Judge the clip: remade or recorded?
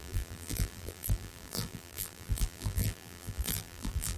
remade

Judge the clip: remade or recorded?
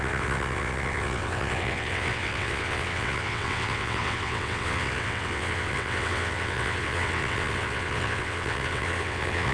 remade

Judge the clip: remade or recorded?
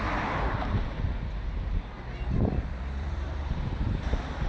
remade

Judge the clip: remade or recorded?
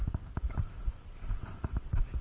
recorded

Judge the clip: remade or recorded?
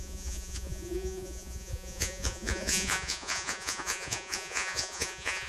remade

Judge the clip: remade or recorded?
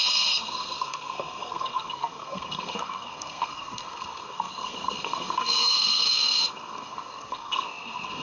remade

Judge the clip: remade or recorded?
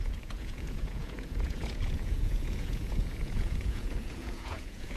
remade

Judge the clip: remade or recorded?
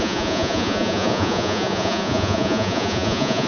remade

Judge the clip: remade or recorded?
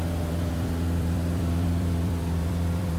remade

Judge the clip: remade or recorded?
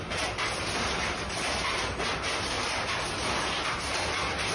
recorded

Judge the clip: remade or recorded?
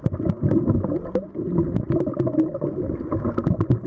recorded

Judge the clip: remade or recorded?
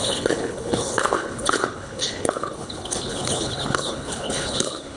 remade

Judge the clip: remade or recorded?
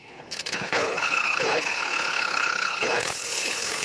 remade